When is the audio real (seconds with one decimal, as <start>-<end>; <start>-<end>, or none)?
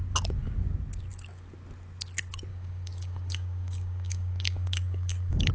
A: 0.0-2.5